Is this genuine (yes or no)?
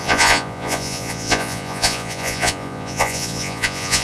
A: no